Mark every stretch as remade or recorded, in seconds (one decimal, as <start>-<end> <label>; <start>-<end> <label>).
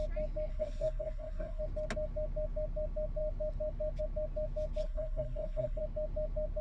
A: 0.0-0.5 recorded; 0.5-1.6 remade; 1.6-4.8 recorded; 4.8-5.8 remade; 5.8-6.6 recorded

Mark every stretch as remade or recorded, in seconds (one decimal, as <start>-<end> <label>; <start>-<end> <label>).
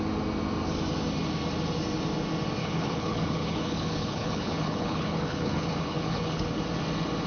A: 0.0-2.6 recorded; 2.6-6.6 remade; 6.6-7.3 recorded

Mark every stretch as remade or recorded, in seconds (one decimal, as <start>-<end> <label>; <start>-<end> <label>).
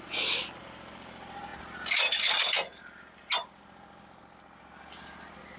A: 0.0-5.6 recorded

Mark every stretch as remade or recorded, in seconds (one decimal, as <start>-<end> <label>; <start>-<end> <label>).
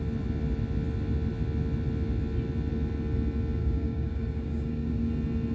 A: 0.0-3.6 recorded; 3.6-5.1 remade; 5.1-5.5 recorded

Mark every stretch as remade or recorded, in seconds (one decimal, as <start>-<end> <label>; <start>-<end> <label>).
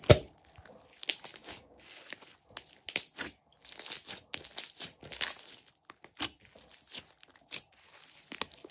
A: 0.0-1.3 recorded; 1.3-2.0 remade; 2.0-8.7 recorded